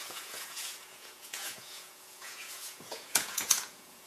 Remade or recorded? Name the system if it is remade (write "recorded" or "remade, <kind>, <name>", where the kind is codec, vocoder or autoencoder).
remade, vocoder, Vocos